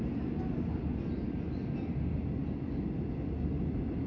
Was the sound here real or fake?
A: real